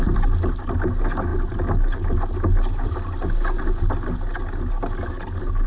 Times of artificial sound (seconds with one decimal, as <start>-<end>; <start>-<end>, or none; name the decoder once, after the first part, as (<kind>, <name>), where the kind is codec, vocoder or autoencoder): none